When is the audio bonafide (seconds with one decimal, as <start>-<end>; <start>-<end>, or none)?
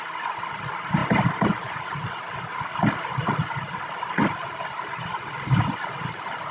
0.0-4.4; 5.1-6.5